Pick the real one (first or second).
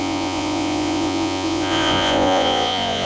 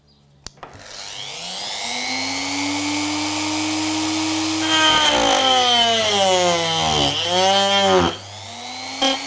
second